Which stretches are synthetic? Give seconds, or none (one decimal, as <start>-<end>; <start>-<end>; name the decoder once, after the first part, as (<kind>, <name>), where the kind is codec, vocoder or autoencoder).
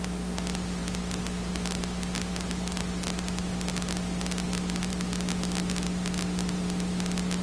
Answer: none